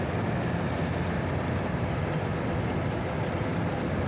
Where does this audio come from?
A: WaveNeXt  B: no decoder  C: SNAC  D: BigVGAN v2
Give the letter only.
B